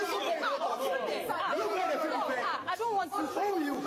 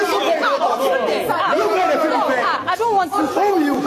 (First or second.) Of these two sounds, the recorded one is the second